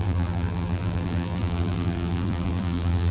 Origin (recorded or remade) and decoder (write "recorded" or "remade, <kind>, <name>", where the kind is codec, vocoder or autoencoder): remade, vocoder, BigVGAN v2